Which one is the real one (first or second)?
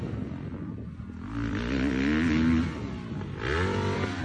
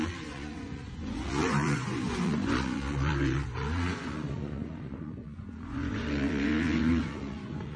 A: first